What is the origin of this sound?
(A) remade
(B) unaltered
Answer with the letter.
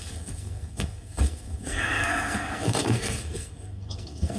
A